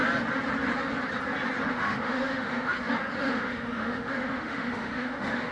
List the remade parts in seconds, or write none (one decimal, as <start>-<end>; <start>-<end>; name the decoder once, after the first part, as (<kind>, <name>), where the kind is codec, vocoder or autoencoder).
1.7-2.7 (autoencoder, DAC-VAE); 3.2-5.5

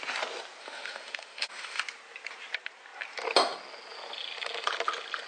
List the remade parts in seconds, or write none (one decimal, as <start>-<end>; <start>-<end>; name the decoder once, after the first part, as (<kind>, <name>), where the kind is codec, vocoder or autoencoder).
0.6-1.8 (autoencoder, DAC-VAE)

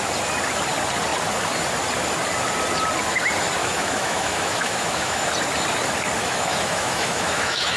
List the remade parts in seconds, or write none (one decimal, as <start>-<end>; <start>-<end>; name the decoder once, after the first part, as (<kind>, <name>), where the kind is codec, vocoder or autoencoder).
3.6-5.3 (autoencoder, DAC-VAE); 6.2-7.8

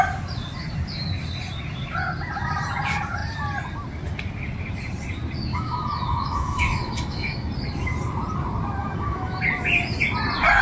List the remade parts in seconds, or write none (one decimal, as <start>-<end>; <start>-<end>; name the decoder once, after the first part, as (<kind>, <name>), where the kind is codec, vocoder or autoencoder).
5.5-7.5 (autoencoder, DAC-VAE); 8.8-9.4

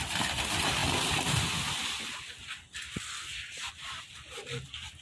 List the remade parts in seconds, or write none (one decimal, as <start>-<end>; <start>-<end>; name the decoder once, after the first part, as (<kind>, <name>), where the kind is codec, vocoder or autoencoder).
none

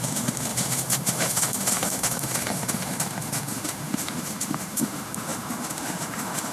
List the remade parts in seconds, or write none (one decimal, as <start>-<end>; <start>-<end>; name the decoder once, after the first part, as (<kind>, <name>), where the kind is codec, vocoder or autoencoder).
0.0-6.5 (autoencoder, DAC-VAE)

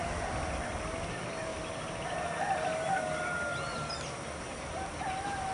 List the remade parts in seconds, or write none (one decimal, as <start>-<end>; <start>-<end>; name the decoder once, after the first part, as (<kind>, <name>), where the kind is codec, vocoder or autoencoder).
none

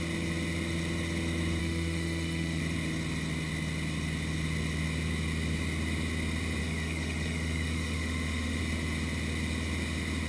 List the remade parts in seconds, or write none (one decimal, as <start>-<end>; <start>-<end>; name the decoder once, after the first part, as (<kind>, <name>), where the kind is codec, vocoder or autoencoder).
1.6-2.6 (autoencoder, DAC-VAE); 6.6-8.6